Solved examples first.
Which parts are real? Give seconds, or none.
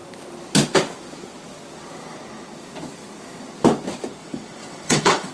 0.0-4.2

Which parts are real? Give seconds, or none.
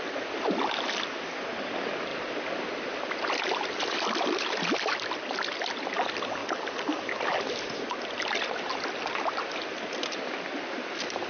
0.0-2.1; 4.5-6.4; 7.0-11.3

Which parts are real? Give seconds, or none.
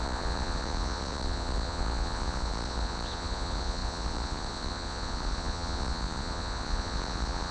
none